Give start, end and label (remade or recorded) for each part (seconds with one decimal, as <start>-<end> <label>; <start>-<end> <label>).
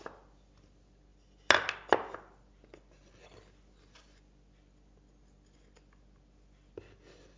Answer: 0.0-7.4 recorded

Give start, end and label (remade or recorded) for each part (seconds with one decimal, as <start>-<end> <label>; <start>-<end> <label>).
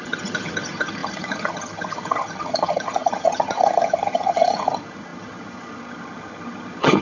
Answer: 0.0-7.0 remade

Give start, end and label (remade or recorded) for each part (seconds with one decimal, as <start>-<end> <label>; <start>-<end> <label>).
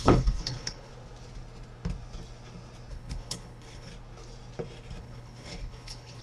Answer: 0.0-0.9 remade; 0.9-2.9 recorded; 2.9-3.9 remade; 3.9-5.0 recorded; 5.0-6.2 remade